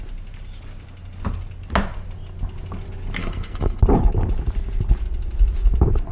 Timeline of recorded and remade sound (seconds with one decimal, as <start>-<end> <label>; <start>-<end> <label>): 0.0-3.2 recorded; 3.2-3.8 remade; 3.8-6.1 recorded